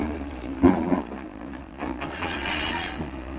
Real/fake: fake